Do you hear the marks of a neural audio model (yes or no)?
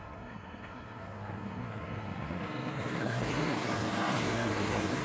yes